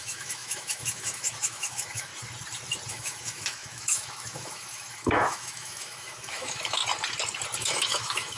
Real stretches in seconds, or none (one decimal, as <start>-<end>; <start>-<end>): 2.1-2.9; 6.8-7.6